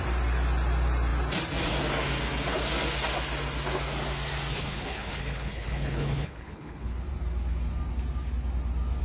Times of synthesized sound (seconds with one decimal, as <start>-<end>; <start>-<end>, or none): 4.5-7.0